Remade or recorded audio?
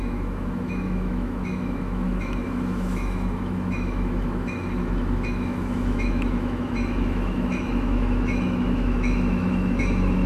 remade